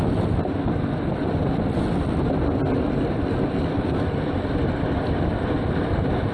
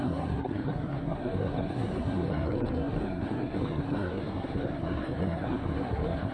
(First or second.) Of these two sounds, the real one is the first